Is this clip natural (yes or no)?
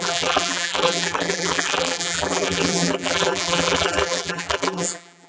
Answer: no